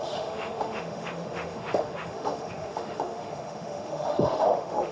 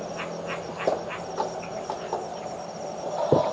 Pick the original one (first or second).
second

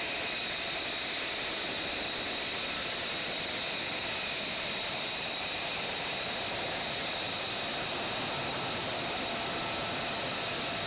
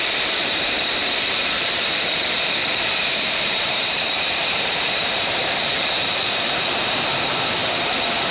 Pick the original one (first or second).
first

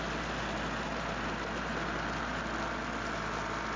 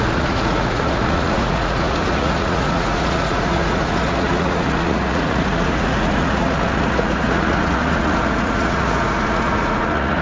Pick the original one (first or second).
first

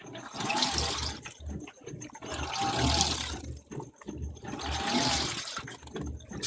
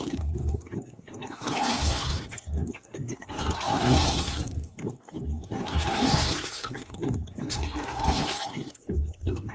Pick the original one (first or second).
first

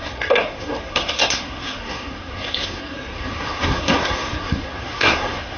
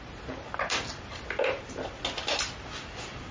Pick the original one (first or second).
second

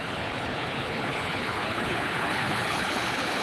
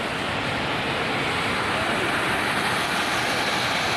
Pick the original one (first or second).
second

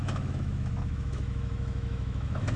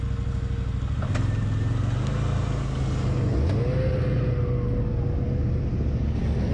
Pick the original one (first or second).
second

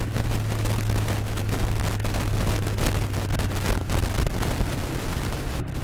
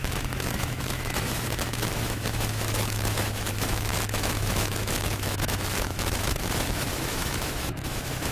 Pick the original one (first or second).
first